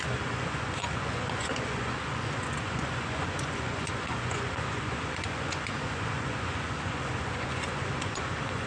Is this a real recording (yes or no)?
no